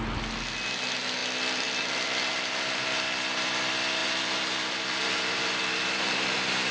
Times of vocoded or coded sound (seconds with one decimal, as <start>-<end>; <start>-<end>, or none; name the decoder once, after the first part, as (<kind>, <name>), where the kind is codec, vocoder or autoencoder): 4.0-6.7 (vocoder, BigVGAN v2)